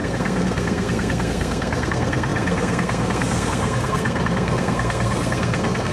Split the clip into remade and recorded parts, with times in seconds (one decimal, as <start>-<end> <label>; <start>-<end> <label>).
0.0-5.9 remade